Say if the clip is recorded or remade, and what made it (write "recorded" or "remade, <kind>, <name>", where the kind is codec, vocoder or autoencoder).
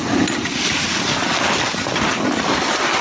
recorded